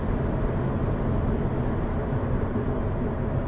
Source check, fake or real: real